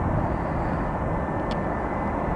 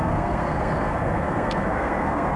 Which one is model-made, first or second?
second